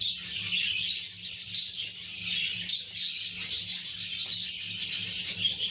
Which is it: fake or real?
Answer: real